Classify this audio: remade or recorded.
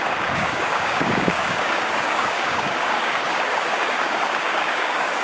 remade